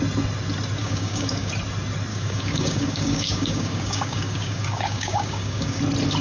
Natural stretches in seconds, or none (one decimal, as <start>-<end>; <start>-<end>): 0.0-0.8; 1.5-2.1; 5.8-6.2

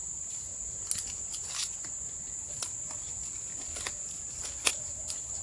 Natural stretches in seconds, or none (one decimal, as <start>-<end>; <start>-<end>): 0.0-5.4

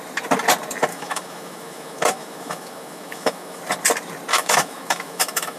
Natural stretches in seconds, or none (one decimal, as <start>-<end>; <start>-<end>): 0.0-0.9; 3.6-4.3

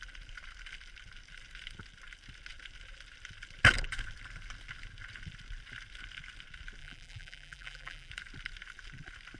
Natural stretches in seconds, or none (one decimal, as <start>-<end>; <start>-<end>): 0.0-6.8; 8.1-9.4

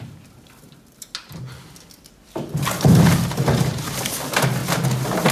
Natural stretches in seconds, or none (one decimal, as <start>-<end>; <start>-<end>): 0.0-5.3

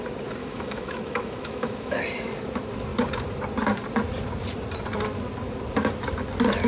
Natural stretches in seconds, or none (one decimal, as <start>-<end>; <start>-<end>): 0.0-0.4; 2.0-6.7

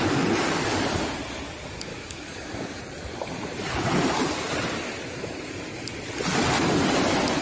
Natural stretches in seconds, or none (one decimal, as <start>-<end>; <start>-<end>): 0.0-1.9; 2.8-7.4

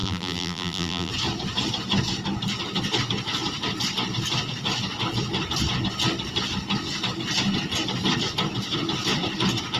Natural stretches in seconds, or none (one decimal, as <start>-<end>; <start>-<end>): 1.1-9.8